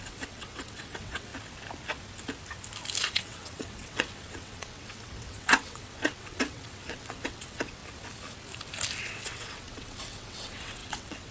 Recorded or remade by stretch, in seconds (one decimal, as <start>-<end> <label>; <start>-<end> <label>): 0.0-1.3 remade; 1.3-3.0 recorded; 3.0-7.8 remade; 7.8-9.0 recorded; 9.0-11.3 remade